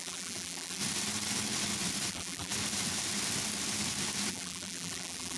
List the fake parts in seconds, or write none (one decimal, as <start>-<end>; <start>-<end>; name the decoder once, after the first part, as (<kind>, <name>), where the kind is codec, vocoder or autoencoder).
0.0-0.8 (vocoder, BigVGAN v2); 2.1-2.5; 4.3-5.4